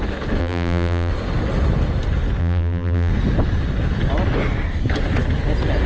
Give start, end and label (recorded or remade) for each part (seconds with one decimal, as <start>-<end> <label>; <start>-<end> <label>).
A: 0.0-0.4 recorded; 0.4-1.1 remade; 1.1-2.4 recorded; 2.4-3.1 remade; 3.1-5.9 recorded